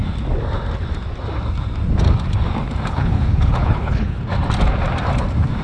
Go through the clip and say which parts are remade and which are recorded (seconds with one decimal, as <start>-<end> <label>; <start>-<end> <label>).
0.0-2.9 recorded; 2.9-4.2 remade; 4.2-5.6 recorded